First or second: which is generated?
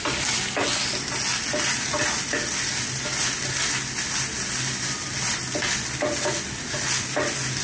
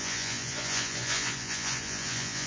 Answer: second